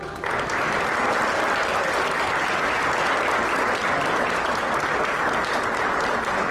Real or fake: real